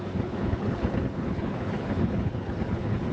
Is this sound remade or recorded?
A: remade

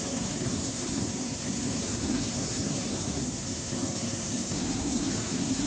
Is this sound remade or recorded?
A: remade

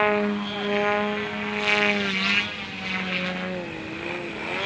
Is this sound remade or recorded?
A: recorded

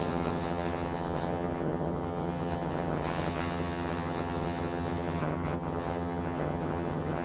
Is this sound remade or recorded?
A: remade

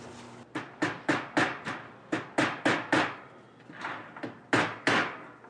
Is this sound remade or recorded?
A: recorded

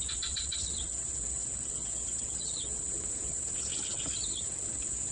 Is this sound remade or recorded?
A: remade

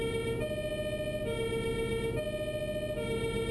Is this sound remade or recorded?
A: recorded